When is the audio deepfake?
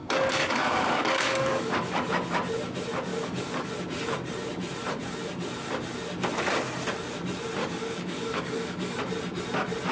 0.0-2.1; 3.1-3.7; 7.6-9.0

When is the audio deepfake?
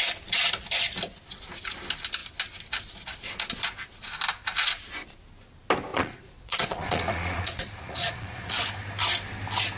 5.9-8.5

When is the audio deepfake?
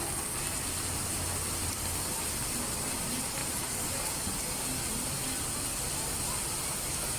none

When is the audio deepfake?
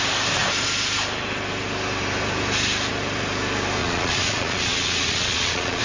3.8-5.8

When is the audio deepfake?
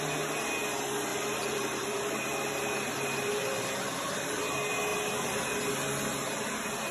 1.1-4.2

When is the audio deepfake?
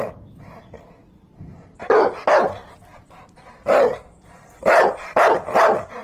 none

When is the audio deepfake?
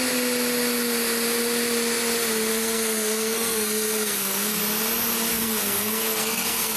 2.5-4.6; 5.3-6.8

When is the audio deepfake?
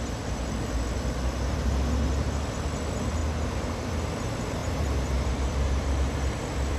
0.0-3.2; 3.9-4.6; 5.3-6.8